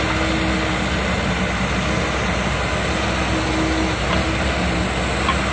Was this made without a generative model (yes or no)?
yes